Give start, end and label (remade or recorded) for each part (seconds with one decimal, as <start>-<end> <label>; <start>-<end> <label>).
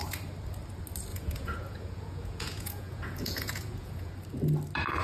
0.0-1.1 recorded; 1.1-4.1 remade; 4.1-5.0 recorded